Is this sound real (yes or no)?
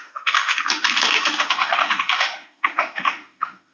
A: no